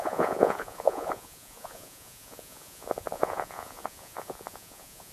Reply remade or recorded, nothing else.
remade